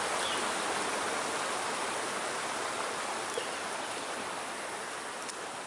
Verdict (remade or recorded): recorded